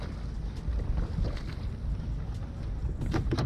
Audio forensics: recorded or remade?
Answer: recorded